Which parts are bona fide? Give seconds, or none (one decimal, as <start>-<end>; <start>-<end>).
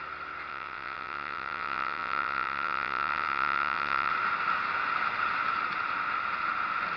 0.0-0.5; 4.1-7.0